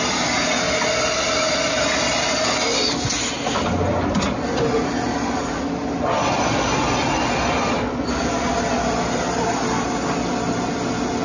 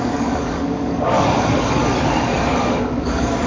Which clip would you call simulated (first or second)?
second